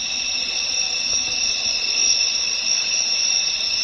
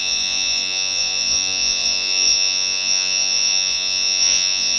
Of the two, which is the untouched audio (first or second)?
first